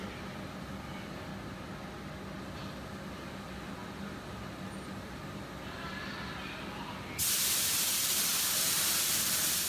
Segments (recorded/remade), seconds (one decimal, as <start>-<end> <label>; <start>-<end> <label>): 0.0-1.3 remade; 1.3-2.4 recorded; 2.4-8.3 remade; 8.3-8.9 recorded; 8.9-9.7 remade